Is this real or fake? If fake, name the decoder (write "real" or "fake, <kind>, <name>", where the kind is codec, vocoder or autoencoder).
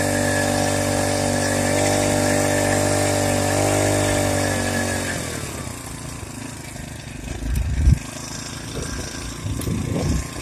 real